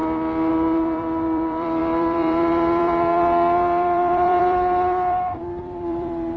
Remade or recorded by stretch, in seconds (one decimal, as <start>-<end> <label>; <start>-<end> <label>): 0.0-0.5 recorded; 0.5-6.4 remade